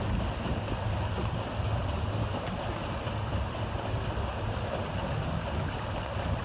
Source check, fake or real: real